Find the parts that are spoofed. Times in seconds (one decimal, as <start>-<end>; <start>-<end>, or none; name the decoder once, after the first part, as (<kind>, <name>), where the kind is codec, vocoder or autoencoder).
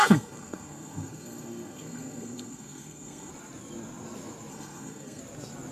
0.0-3.3 (codec, SNAC); 4.5-5.2